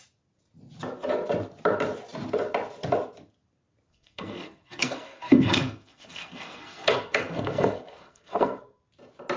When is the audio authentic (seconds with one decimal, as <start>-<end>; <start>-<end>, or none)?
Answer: 0.0-3.9; 8.8-9.4